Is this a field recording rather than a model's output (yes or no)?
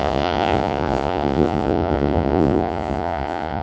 no